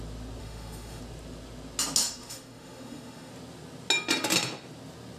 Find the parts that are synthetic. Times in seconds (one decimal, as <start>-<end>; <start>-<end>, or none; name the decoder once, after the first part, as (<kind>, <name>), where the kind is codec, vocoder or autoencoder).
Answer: 0.4-1.0 (autoencoder, DAC-VAE); 2.0-3.3